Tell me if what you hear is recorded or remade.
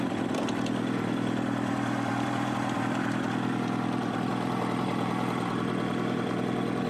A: recorded